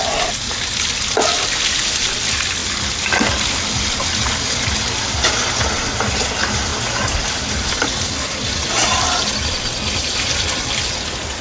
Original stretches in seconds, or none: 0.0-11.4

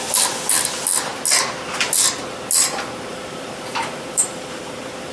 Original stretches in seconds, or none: 0.0-3.1; 4.6-5.1

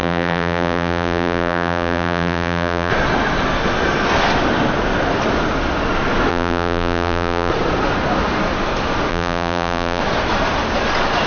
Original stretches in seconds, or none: 2.9-6.3; 7.5-9.1; 10.0-11.3

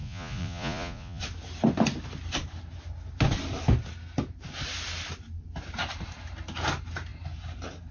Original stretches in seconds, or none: 1.2-7.9

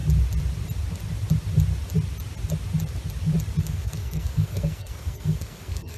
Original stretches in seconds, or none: 0.0-3.6

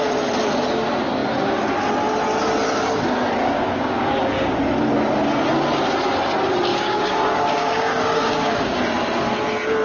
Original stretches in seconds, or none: 0.0-3.4; 4.6-6.7; 8.8-9.8